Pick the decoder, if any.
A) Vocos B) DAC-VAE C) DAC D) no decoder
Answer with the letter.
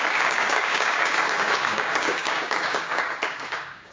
C